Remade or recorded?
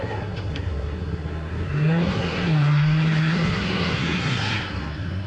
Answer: remade